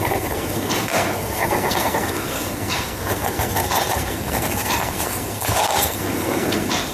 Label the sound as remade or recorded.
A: remade